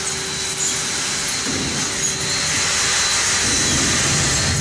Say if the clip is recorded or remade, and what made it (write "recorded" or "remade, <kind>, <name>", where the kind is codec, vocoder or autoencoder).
recorded